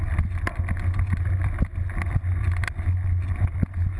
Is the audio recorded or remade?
recorded